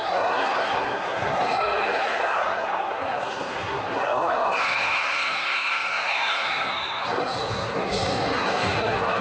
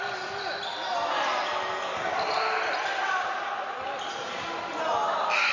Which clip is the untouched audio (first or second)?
second